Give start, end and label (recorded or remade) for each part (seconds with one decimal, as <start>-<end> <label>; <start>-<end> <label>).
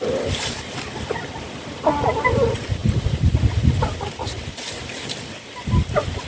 0.0-6.3 recorded